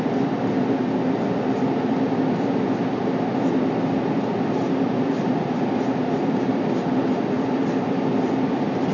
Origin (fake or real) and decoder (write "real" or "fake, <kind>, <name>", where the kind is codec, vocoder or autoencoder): real